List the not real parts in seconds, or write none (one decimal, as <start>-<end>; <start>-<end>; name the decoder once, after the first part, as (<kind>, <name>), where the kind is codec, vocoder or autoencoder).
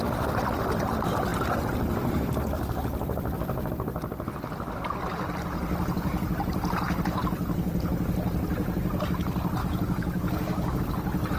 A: 9.6-10.8 (codec, DAC)